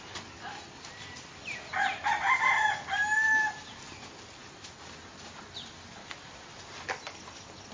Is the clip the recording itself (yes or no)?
yes